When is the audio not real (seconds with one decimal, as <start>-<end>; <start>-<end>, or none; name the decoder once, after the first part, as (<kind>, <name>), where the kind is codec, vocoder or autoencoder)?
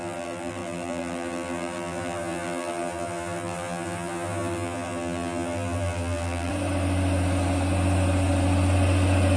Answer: 0.0-6.5 (vocoder, BigVGAN v2)